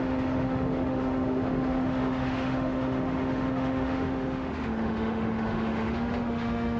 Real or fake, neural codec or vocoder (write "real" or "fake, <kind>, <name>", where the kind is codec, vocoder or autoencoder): fake, autoencoder, DAC-VAE